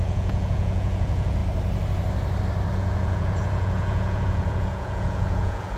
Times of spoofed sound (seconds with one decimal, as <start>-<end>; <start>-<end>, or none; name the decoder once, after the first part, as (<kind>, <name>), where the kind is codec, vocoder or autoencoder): 0.0-1.4 (vocoder, Vocos); 2.7-5.8